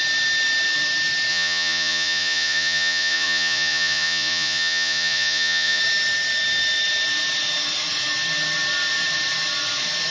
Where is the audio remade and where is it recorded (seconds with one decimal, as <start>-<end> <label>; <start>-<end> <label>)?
0.0-1.3 recorded; 1.3-5.8 remade; 5.8-10.1 recorded